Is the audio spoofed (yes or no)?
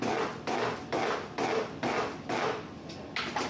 no